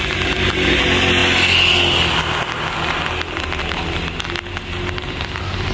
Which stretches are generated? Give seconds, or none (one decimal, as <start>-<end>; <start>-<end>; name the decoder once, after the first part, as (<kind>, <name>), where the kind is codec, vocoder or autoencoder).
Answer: none